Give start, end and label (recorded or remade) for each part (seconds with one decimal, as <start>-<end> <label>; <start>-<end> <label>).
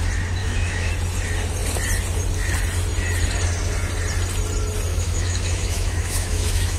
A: 0.0-0.4 recorded; 0.4-0.9 remade; 0.9-4.9 recorded; 4.9-6.8 remade